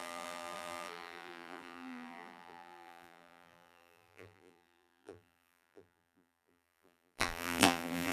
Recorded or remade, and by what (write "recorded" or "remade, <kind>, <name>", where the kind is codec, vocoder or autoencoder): remade, vocoder, BigVGAN v2